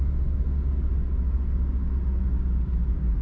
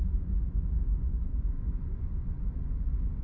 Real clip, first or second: first